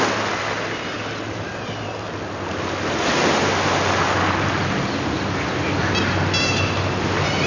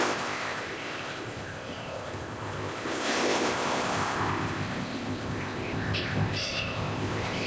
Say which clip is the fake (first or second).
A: second